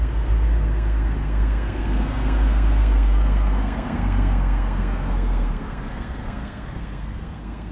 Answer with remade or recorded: remade